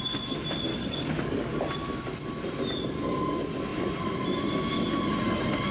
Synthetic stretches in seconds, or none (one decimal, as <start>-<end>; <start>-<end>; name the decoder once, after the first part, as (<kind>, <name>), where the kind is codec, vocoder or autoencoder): 0.7-1.6 (codec, DAC)